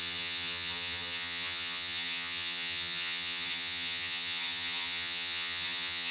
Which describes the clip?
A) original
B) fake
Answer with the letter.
B